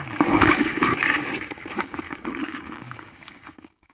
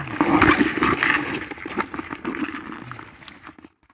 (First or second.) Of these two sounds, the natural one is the second